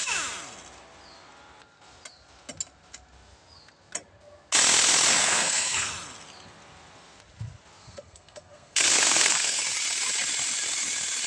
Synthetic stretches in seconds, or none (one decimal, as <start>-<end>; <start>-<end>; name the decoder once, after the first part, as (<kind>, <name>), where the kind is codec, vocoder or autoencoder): 5.2-5.9 (codec, SNAC); 7.8-9.6

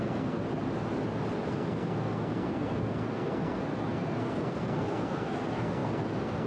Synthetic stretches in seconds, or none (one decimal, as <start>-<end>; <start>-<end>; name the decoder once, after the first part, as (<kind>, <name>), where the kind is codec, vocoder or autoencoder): 0.0-0.4 (codec, SNAC); 1.5-6.5